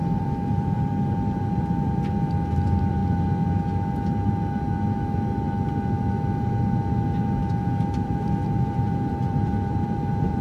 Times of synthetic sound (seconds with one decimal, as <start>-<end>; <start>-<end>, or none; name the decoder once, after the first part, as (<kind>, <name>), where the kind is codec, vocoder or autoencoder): 0.0-3.0 (vocoder, BigVGAN v2); 7.9-10.4